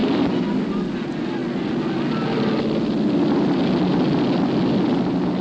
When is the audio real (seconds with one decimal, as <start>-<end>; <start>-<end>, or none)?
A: 0.0-5.4